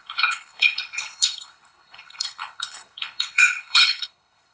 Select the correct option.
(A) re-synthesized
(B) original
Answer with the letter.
A